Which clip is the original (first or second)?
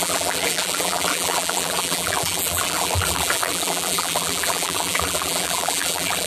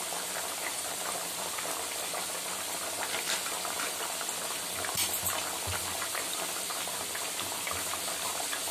second